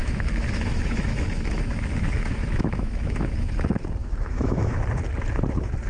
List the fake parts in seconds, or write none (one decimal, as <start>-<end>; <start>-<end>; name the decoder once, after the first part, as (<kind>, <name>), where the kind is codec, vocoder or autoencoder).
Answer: 0.0-3.5 (autoencoder, DAC-VAE); 4.0-4.8